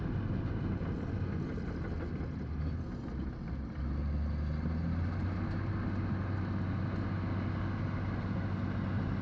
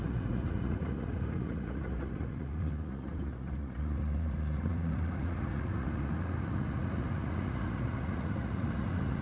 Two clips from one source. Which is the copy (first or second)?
second